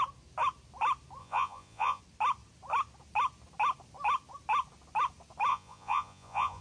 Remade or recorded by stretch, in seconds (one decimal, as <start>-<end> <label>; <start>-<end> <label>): 0.0-1.2 recorded; 1.2-2.0 remade; 2.0-5.5 recorded; 5.5-6.6 remade